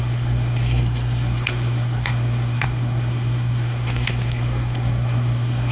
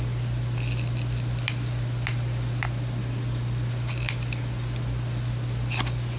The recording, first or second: second